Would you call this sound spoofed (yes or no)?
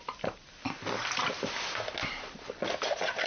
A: no